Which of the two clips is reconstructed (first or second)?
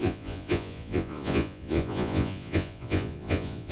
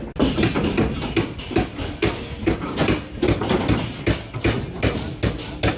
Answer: first